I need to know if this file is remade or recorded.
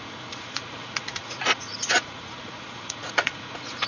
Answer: remade